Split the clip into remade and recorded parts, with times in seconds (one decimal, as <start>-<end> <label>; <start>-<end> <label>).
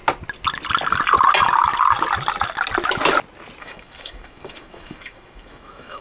0.0-3.6 recorded; 3.6-6.0 remade